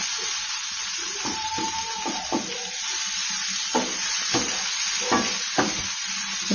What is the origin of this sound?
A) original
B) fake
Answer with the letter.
A